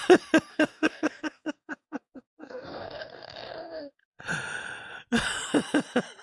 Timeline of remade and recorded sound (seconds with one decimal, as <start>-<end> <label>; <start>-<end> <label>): 0.0-0.5 recorded; 0.5-4.2 remade; 4.2-6.2 recorded